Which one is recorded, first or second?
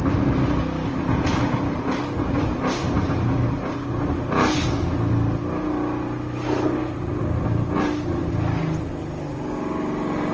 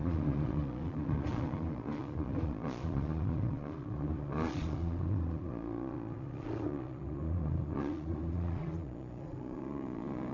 first